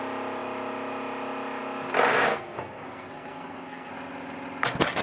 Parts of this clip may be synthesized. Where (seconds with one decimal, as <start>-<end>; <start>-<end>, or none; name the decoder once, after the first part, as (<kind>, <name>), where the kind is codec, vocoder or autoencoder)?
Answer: 2.3-3.9 (codec, SNAC)

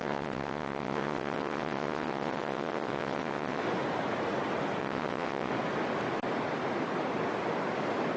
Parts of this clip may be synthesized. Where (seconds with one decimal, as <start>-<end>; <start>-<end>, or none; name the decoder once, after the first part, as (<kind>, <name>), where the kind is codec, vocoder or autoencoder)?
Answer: 0.0-3.6 (vocoder, WaveNeXt); 4.8-5.5